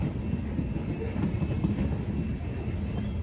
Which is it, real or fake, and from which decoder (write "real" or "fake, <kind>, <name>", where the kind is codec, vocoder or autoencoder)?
real